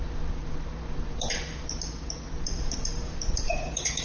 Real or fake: fake